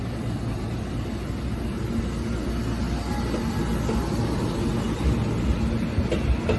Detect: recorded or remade recorded